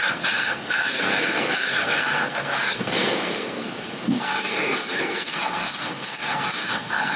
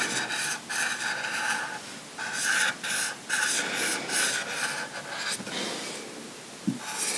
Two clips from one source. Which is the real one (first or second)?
second